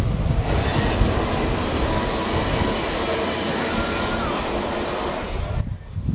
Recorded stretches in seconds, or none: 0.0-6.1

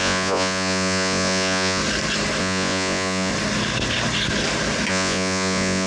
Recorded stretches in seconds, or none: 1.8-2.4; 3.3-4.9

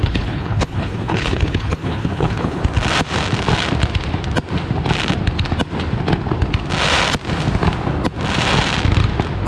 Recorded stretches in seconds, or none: 2.6-9.5